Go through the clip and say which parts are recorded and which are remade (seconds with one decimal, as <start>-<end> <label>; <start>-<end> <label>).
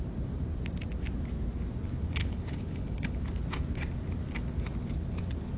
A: 0.0-2.2 recorded; 2.2-3.2 remade; 3.2-5.6 recorded